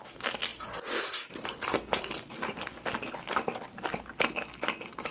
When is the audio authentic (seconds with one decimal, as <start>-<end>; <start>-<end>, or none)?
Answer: 0.0-5.1